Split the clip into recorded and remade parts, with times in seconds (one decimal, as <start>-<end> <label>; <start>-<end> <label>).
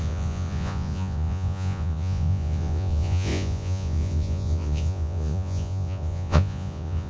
0.0-7.1 remade